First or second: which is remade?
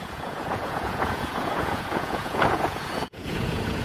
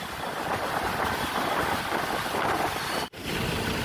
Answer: first